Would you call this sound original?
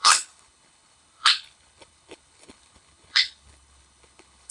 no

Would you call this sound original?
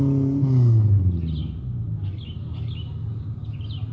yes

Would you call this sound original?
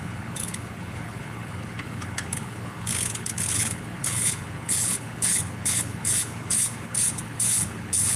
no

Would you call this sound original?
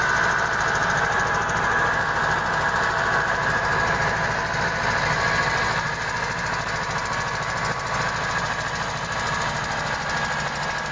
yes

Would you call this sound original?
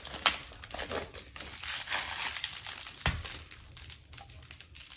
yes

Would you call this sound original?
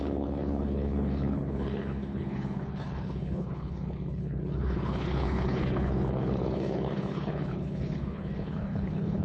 no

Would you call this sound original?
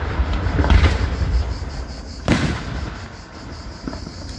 yes